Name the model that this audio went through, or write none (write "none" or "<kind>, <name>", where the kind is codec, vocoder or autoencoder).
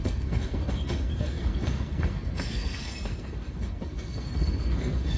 codec, SNAC